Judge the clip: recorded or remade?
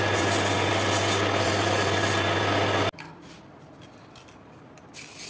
recorded